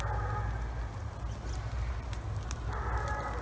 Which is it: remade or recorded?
recorded